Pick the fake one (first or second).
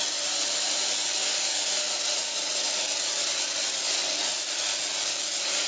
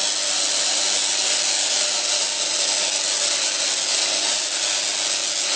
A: first